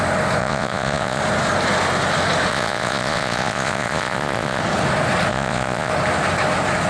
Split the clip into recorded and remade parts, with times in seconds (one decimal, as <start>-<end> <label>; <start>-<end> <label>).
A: 0.0-0.4 recorded; 0.4-1.2 remade; 1.2-2.5 recorded; 2.5-4.6 remade; 4.6-5.3 recorded; 5.3-5.9 remade; 5.9-6.9 recorded